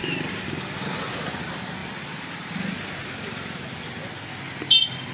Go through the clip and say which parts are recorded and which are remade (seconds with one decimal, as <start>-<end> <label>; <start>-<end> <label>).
0.0-5.1 recorded